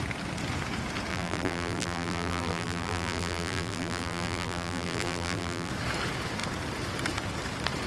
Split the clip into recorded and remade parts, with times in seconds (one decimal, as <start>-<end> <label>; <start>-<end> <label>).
0.0-1.1 recorded; 1.1-5.7 remade; 5.7-7.9 recorded